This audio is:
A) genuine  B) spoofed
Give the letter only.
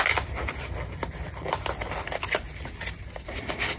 A